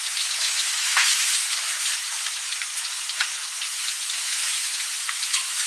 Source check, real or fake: fake